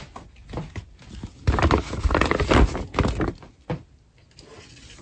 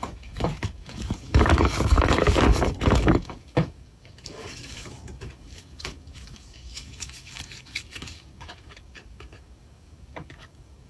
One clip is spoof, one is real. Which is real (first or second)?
first